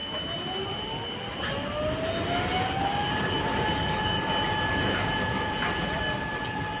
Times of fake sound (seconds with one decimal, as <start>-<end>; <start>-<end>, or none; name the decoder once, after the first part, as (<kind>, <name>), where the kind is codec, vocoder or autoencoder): 3.5-4.3 (codec, DAC)